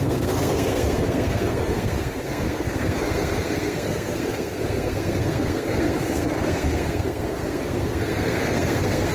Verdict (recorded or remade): remade